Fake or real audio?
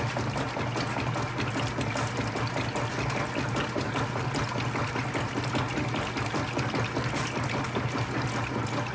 real